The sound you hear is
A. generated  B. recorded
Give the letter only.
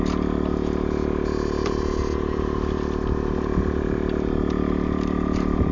B